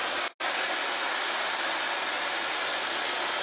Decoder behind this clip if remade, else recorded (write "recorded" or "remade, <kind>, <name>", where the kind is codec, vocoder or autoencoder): recorded